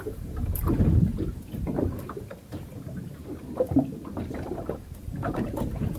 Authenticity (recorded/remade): remade